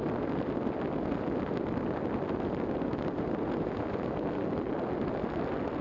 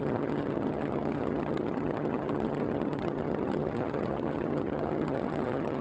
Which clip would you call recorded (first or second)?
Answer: first